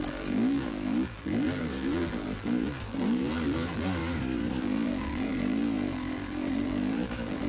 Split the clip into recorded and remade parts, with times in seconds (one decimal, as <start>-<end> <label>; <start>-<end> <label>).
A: 0.0-4.0 remade; 4.0-4.6 recorded; 4.6-7.5 remade